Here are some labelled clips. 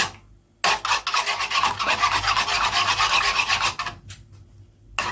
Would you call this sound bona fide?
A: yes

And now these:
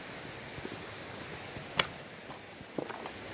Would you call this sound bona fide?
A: yes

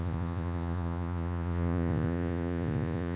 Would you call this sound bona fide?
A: no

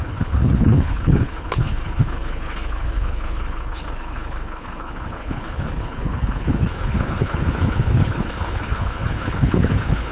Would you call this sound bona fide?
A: no